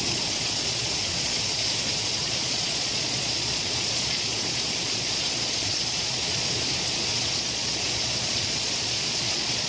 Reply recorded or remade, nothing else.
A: remade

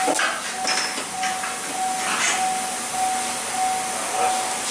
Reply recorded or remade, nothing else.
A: recorded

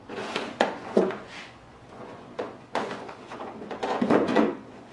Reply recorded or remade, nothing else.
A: remade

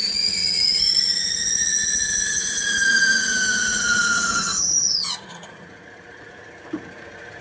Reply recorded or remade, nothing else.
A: remade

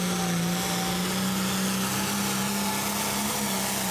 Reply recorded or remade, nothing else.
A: recorded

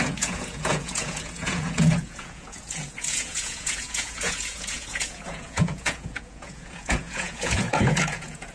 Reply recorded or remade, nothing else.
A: remade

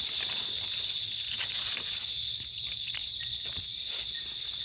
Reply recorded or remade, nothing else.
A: recorded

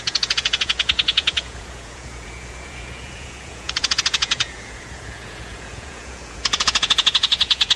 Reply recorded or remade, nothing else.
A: remade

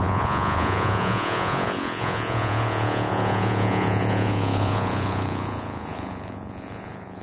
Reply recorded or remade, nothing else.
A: remade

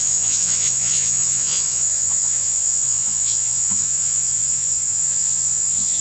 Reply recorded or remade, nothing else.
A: remade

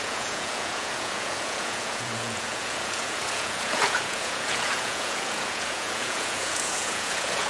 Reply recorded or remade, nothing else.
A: remade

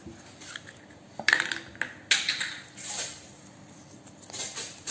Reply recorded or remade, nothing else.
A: recorded